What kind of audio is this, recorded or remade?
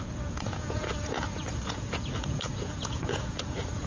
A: remade